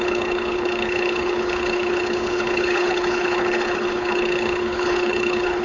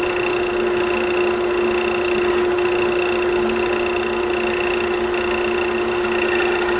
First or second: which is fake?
first